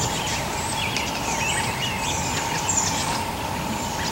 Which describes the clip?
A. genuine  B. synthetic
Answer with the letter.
A